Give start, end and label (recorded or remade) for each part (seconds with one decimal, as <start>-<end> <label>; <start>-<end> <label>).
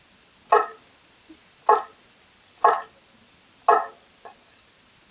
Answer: 0.0-5.1 recorded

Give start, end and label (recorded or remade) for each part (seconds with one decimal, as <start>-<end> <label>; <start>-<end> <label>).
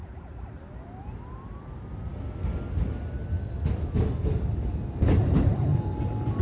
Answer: 0.0-6.4 recorded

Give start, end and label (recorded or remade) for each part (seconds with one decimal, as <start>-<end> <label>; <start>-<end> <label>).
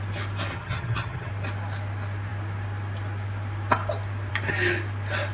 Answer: 0.0-0.5 recorded; 0.5-1.3 remade; 1.3-5.3 recorded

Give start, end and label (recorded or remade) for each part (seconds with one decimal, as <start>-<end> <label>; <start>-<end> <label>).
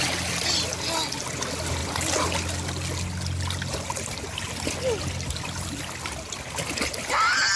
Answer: 0.0-7.6 recorded